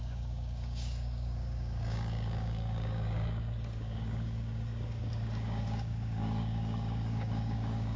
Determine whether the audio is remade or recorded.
remade